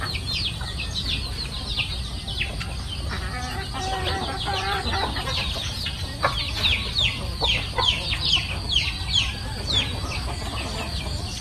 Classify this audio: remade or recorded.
recorded